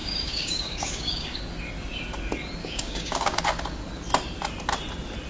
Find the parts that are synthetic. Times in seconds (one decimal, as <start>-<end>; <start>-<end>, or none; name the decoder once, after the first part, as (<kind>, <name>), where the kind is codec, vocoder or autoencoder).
0.0-1.4 (codec, DAC); 2.6-3.4